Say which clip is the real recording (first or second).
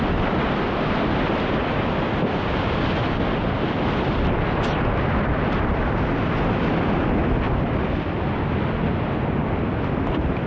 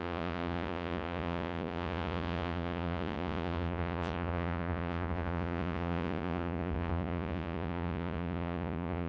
first